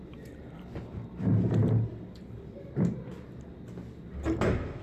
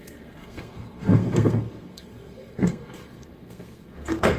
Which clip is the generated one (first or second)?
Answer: second